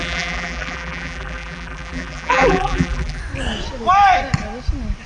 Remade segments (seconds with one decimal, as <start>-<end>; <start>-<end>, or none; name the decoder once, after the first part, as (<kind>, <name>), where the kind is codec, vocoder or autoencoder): 0.0-3.2 (vocoder, BigVGAN v2)